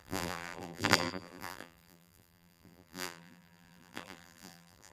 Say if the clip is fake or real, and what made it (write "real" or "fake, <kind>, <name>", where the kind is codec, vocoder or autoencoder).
fake, vocoder, BigVGAN v2